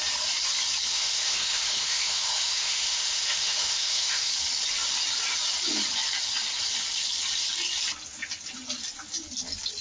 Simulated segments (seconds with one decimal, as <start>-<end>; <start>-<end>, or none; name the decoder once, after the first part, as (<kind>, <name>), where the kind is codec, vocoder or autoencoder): 0.9-4.3 (autoencoder, DAC-VAE)